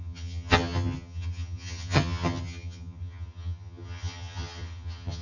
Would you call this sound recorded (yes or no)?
no